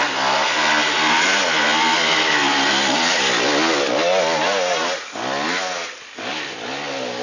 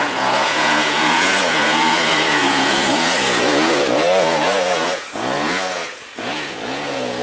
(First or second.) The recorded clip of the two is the first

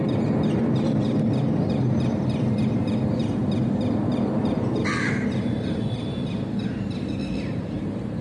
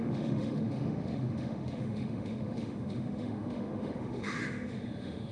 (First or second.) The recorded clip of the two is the first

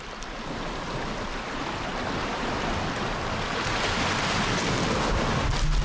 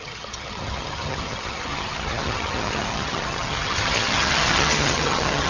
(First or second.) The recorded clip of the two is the first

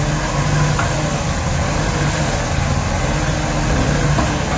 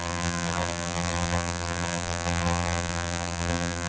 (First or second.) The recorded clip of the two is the first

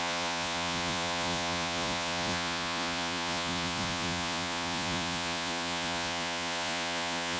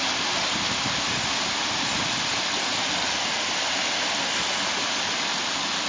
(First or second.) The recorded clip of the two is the second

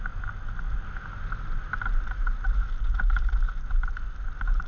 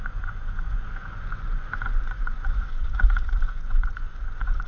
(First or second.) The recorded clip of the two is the first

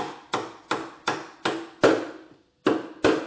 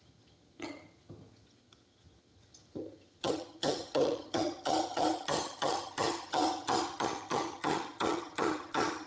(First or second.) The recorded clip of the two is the first